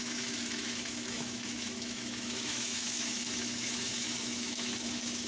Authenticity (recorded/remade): remade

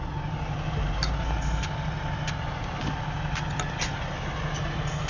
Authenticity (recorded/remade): recorded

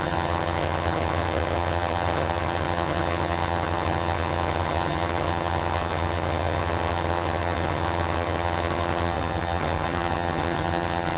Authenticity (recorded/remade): remade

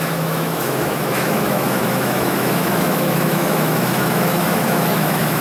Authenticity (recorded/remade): remade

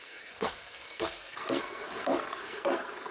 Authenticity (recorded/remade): remade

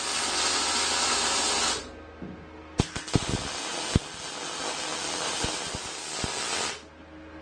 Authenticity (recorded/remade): recorded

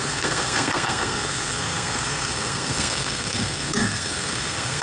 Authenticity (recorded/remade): remade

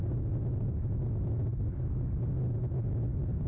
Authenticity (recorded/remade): recorded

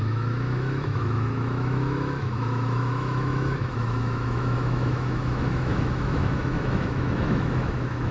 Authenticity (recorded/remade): remade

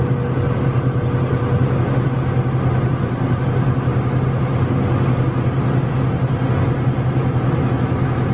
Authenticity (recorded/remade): recorded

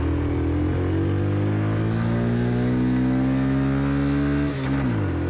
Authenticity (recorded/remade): recorded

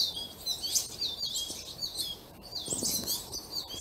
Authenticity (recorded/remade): remade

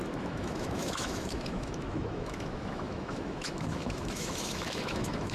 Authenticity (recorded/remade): remade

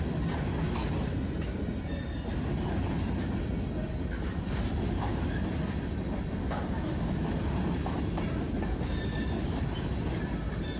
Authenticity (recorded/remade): recorded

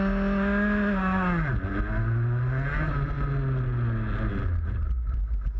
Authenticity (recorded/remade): recorded